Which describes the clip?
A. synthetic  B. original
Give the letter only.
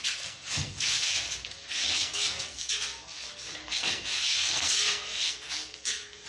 A